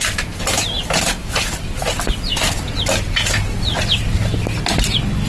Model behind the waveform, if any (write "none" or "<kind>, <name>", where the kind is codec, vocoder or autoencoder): none